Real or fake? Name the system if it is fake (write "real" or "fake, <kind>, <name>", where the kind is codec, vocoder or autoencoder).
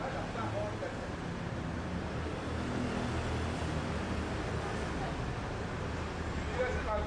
real